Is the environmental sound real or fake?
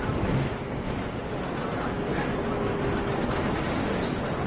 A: real